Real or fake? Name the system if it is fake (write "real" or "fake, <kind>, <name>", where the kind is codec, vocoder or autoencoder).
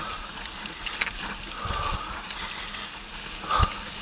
real